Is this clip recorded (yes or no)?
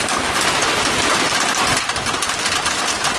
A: yes